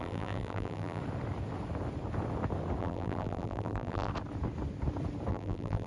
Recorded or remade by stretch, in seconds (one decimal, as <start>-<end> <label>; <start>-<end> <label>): 0.0-1.0 remade; 1.0-2.8 recorded; 2.8-4.1 remade; 4.1-5.3 recorded; 5.3-5.9 remade